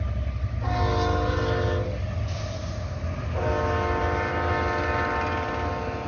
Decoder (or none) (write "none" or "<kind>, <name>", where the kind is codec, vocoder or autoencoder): none